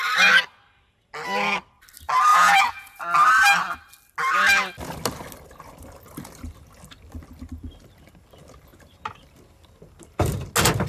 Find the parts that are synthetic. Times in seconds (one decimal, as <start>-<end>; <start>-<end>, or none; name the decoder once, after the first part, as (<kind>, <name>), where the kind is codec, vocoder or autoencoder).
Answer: 2.3-3.0 (vocoder, Vocos)